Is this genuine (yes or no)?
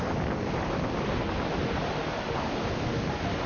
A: yes